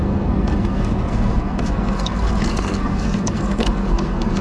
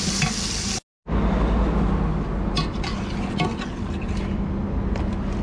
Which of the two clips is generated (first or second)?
first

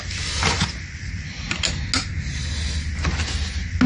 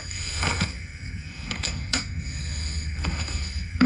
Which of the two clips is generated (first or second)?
second